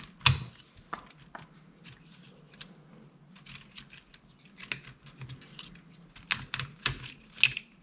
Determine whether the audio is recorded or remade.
recorded